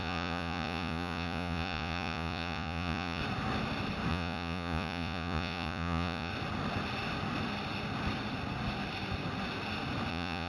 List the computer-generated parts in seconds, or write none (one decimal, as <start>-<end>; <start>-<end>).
0.0-3.2; 4.1-6.3; 10.1-10.5